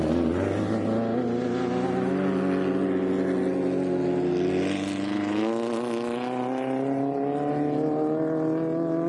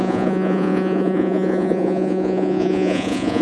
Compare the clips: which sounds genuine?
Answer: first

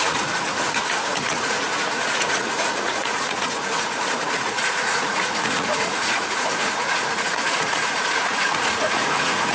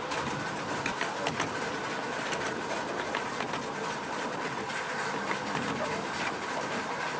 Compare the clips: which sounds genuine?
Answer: second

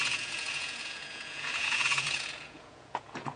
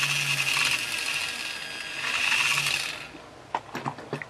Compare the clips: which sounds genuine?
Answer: second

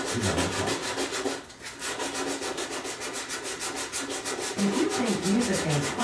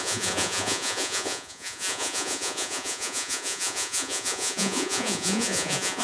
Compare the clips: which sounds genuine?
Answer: first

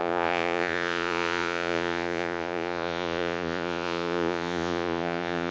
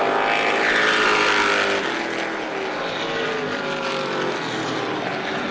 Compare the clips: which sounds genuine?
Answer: second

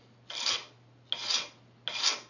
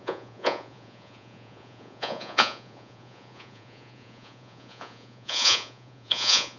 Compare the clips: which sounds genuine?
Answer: first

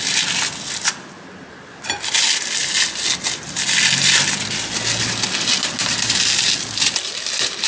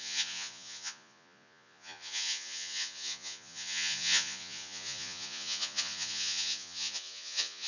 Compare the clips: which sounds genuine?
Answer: first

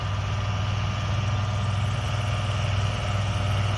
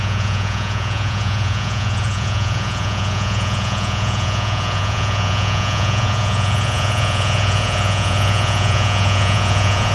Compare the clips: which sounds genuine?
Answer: first